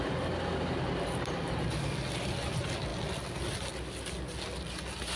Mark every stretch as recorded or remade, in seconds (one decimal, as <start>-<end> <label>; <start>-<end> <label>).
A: 0.0-5.2 recorded